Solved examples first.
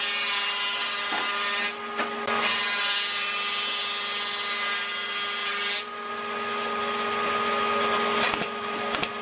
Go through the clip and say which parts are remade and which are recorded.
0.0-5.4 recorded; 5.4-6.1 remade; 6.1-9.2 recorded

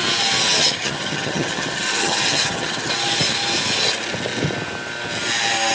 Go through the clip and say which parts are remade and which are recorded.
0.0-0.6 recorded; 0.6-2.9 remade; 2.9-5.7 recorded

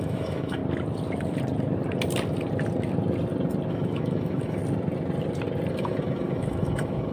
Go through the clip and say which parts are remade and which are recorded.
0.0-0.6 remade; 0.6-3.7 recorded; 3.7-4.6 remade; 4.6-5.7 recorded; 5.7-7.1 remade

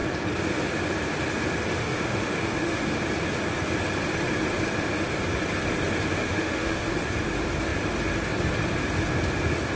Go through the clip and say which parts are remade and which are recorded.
0.0-1.8 recorded; 1.8-2.8 remade; 2.8-6.2 recorded; 6.2-6.9 remade; 6.9-9.8 recorded

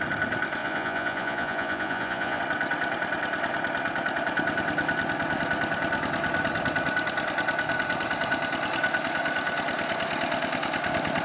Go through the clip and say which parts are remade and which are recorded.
0.0-0.6 recorded; 0.6-2.4 remade; 2.4-11.2 recorded